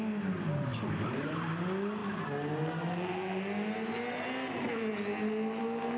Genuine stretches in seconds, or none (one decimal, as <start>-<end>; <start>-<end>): 0.0-6.0